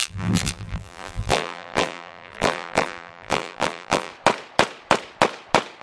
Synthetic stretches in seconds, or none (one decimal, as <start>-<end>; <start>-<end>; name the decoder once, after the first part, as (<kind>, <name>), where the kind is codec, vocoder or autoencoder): 0.0-4.1 (vocoder, BigVGAN v2)

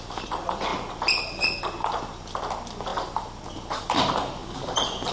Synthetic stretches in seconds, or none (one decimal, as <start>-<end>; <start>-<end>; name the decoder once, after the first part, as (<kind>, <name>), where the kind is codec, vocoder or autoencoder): 4.4-5.1 (vocoder, BigVGAN v2)

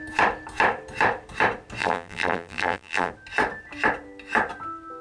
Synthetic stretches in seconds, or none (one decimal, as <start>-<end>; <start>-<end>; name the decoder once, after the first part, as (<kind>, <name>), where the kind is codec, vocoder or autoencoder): 1.8-3.1 (vocoder, BigVGAN v2)

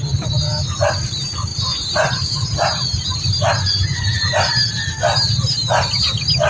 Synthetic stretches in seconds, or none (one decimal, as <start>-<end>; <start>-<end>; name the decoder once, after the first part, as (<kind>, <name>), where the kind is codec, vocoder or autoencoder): none

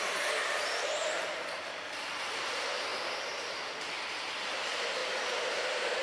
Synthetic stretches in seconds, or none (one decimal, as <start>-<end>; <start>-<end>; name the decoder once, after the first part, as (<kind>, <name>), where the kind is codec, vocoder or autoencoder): 0.0-5.0 (vocoder, BigVGAN v2); 5.6-6.0

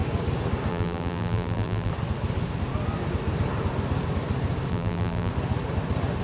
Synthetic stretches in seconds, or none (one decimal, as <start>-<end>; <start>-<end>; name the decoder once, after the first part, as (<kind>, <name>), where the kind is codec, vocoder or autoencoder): 0.7-1.9 (vocoder, BigVGAN v2); 4.7-5.3